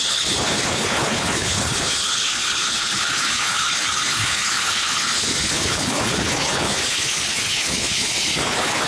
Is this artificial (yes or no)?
yes